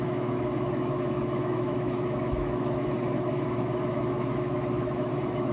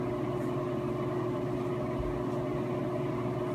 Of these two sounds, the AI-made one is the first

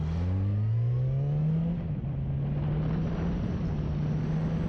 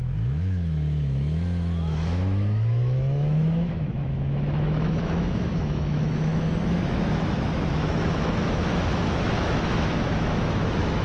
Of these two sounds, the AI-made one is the second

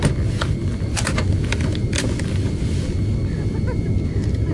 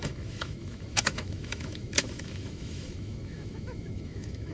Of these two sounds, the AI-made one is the second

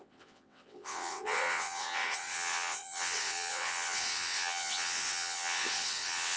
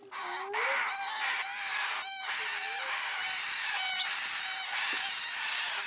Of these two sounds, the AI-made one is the first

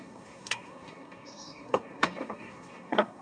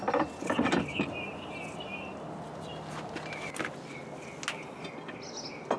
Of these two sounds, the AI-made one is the first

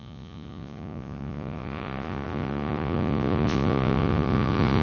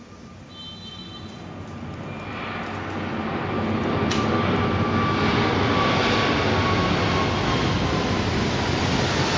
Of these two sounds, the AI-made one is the first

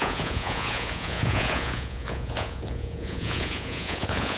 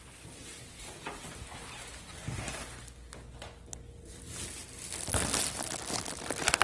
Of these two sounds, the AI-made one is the first